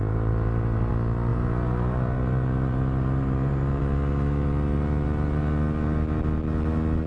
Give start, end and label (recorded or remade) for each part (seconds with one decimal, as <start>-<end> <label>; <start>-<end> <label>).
0.0-0.9 remade; 0.9-1.3 recorded; 1.3-3.8 remade; 3.8-7.1 recorded